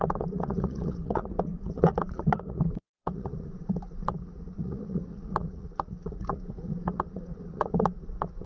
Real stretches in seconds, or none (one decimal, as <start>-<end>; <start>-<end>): none